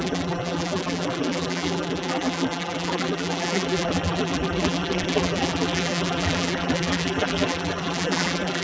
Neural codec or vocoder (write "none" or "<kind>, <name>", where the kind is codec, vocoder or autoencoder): vocoder, BigVGAN v2